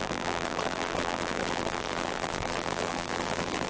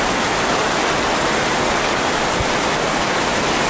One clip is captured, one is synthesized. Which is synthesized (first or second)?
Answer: first